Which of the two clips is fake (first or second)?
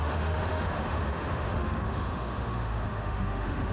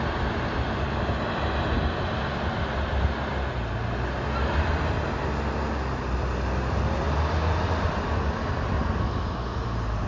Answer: first